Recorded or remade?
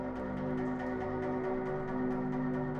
recorded